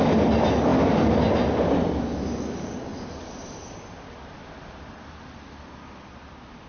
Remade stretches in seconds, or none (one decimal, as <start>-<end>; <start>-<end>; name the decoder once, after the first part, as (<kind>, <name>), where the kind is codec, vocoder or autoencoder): 2.9-3.9 (vocoder, BigVGAN v2)